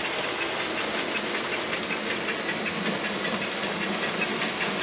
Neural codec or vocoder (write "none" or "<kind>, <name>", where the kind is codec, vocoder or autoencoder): none